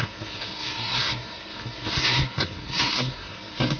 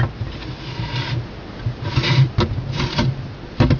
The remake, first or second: first